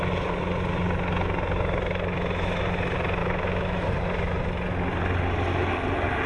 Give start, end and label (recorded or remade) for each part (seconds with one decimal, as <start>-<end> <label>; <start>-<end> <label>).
0.0-3.2 recorded; 3.2-3.9 remade; 3.9-6.3 recorded